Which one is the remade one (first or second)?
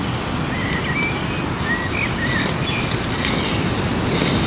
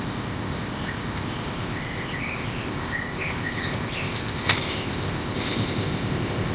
second